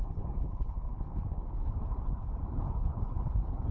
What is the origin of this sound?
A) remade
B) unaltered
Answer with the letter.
A